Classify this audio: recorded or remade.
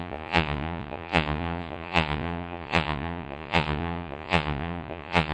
remade